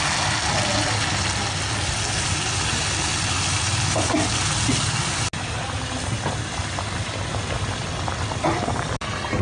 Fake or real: real